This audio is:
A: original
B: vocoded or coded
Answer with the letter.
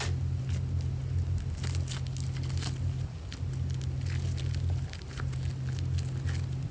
A